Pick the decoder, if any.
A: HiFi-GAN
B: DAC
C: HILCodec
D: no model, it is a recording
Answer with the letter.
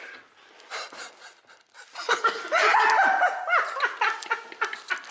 D